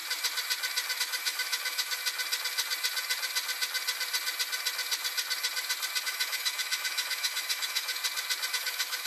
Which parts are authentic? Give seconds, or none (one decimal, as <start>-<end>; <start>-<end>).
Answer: 0.0-1.0; 2.0-6.0; 8.0-8.5